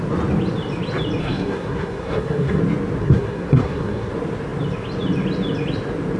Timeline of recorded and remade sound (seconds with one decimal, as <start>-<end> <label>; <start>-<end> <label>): 0.0-1.2 recorded; 1.2-2.6 remade; 2.6-3.0 recorded; 3.0-4.1 remade; 4.1-6.2 recorded